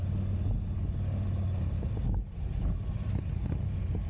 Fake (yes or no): no